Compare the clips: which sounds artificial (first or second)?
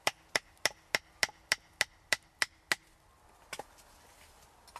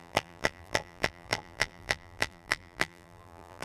second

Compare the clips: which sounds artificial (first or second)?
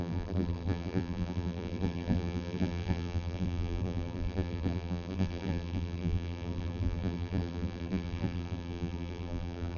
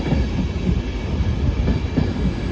first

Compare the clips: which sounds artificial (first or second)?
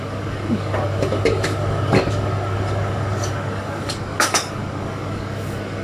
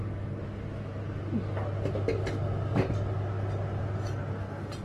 first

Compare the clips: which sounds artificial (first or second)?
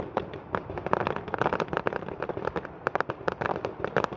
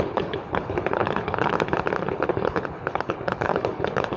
second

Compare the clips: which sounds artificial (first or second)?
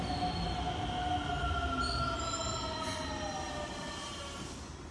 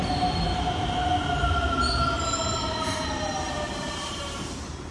second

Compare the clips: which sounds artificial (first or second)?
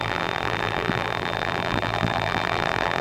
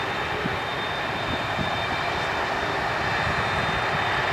first